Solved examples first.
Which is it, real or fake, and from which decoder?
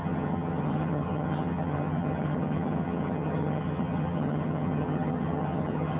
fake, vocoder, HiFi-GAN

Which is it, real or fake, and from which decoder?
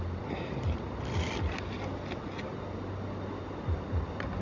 real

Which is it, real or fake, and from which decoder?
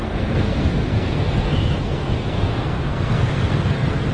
fake, codec, SNAC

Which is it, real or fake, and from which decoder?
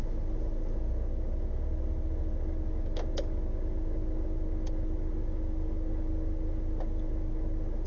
real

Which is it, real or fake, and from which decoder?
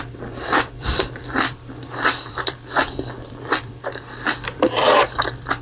fake, vocoder, BigVGAN v2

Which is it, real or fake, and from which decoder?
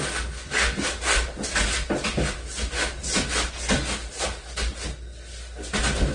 real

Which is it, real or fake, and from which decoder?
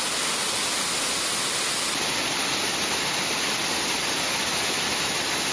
real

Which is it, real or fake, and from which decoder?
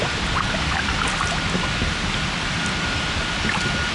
real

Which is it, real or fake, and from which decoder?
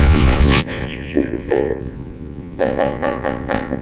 fake, vocoder, Vocos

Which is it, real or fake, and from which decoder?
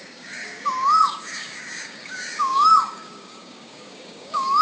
fake, codec, DAC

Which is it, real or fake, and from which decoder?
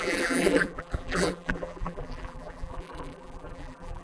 fake, vocoder, BigVGAN v2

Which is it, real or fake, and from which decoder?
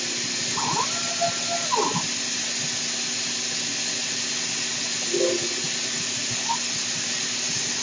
real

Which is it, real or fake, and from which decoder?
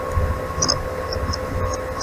real